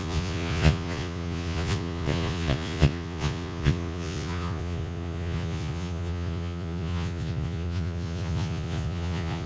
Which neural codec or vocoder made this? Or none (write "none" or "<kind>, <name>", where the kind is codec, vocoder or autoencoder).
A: vocoder, Vocos